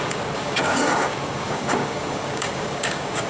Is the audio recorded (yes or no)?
no